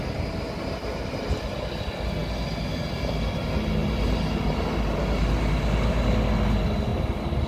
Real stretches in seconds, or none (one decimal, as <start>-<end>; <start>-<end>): 0.0-7.5